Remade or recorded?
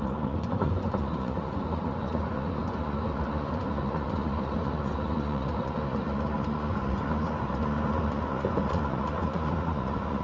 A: remade